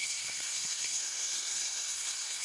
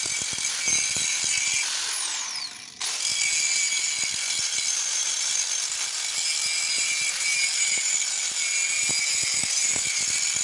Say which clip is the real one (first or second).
second